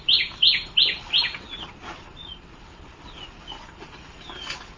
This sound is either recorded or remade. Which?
recorded